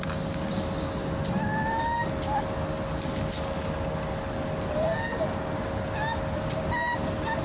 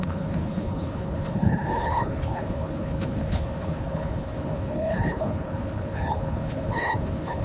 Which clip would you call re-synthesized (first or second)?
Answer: second